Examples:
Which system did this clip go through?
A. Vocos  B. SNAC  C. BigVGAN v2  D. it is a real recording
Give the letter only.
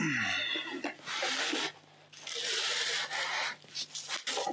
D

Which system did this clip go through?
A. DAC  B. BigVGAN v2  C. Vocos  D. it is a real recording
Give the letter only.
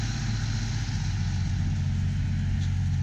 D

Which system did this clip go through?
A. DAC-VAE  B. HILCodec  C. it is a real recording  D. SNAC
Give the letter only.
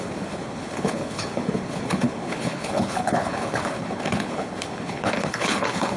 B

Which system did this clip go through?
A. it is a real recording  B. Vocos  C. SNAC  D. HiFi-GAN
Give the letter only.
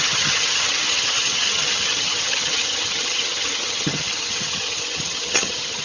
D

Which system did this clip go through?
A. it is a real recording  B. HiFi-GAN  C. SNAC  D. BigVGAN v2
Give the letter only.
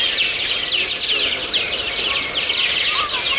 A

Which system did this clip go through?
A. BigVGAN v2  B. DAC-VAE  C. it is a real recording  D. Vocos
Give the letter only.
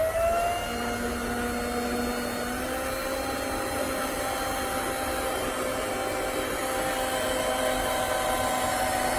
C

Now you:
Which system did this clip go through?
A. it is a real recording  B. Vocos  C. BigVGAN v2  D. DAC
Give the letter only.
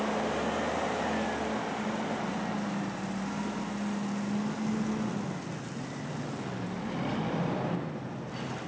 A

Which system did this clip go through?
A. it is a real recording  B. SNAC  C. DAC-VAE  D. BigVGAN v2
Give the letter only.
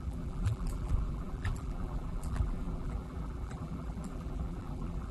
D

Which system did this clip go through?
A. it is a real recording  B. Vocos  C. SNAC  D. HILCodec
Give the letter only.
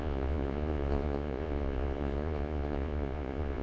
B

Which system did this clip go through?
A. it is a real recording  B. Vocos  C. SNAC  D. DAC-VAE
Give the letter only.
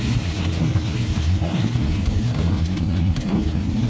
C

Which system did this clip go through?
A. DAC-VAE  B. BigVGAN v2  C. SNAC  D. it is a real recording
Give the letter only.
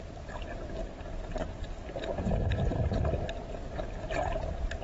D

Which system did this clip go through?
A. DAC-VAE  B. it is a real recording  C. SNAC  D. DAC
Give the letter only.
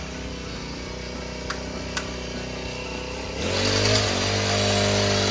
B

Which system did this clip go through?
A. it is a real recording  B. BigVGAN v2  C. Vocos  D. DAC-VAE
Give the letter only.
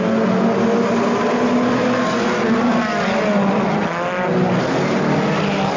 A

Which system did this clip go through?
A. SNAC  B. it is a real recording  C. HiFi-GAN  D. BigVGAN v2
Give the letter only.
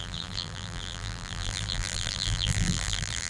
D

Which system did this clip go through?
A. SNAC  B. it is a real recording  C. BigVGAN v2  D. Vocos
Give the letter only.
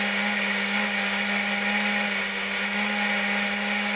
B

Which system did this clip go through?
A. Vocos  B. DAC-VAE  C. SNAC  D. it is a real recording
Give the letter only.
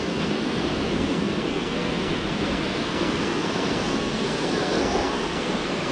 C